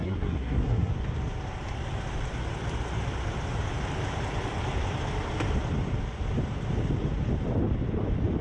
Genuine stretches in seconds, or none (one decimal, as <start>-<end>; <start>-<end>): 0.9-8.4